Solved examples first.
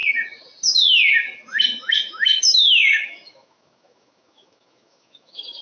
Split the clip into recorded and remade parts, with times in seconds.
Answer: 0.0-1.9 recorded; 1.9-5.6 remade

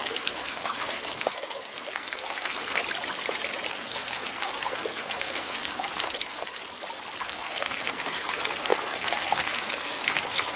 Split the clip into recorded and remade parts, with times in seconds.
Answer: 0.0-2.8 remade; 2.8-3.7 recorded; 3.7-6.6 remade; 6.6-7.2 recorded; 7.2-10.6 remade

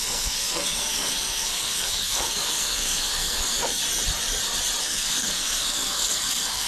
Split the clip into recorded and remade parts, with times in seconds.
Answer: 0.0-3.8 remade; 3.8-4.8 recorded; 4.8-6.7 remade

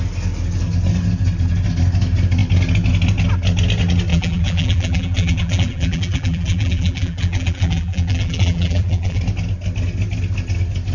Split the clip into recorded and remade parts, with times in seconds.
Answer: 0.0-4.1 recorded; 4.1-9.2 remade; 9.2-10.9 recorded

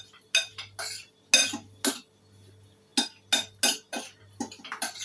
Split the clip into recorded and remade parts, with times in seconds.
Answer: 0.0-5.0 recorded